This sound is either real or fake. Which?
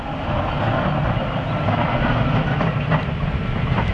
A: real